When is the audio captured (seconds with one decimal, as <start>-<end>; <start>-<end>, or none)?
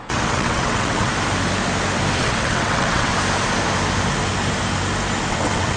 1.1-2.2; 3.1-5.3